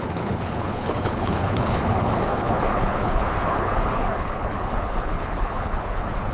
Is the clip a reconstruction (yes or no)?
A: yes